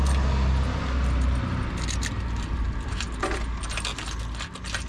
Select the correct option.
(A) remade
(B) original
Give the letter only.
B